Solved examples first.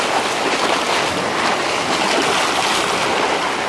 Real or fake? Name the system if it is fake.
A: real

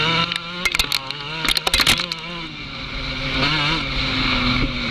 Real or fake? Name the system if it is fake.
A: real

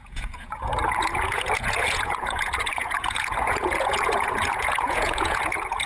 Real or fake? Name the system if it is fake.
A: fake, vocoder, Vocos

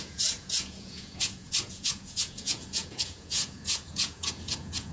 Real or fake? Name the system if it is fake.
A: fake, vocoder, Vocos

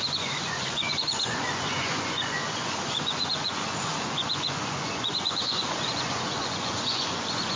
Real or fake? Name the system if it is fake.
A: fake, vocoder, Vocos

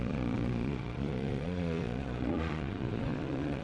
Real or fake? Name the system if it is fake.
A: fake, vocoder, Vocos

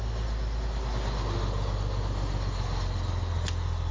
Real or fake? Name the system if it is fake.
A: real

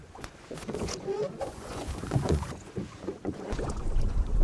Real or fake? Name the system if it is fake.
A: fake, vocoder, Vocos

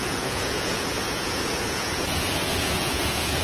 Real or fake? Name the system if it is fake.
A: fake, vocoder, Vocos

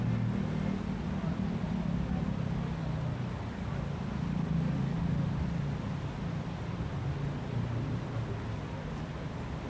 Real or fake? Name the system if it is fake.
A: real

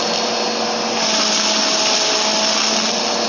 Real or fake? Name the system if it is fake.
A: real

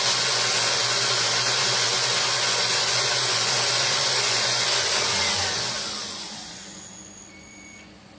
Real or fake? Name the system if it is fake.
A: fake, vocoder, Vocos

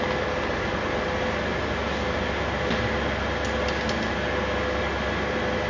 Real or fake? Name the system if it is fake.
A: real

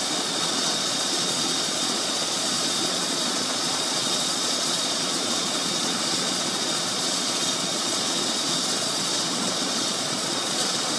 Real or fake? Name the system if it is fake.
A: fake, vocoder, Vocos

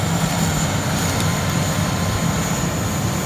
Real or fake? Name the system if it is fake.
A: real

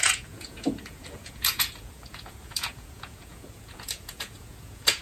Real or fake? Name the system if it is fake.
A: fake, vocoder, Vocos